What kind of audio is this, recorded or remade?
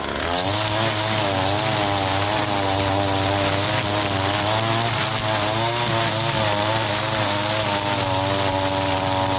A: recorded